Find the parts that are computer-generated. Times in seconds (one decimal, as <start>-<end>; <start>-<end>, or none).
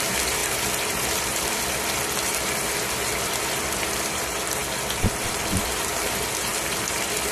0.4-1.7